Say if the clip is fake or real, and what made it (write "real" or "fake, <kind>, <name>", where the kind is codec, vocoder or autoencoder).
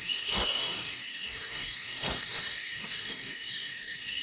fake, codec, DAC